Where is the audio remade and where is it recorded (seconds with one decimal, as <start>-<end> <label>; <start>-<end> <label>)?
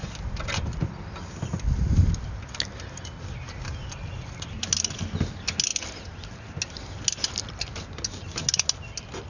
0.0-9.3 recorded